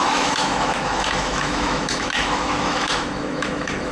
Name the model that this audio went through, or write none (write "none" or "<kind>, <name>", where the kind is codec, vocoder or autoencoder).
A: autoencoder, DAC-VAE